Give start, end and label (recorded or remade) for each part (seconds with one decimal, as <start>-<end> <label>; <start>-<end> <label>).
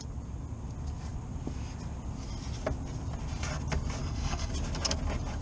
0.0-4.0 recorded; 4.0-4.5 remade; 4.5-5.4 recorded